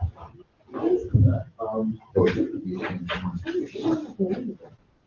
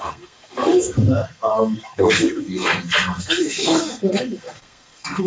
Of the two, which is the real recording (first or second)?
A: first